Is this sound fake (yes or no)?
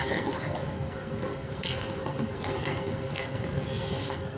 yes